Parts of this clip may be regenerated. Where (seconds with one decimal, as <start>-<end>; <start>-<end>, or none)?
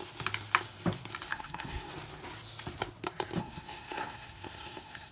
1.3-1.9; 3.4-5.1